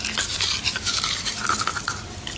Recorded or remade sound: recorded